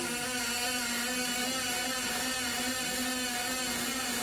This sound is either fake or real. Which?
real